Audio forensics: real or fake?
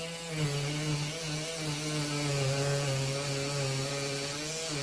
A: real